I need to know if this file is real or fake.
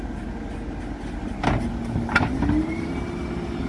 real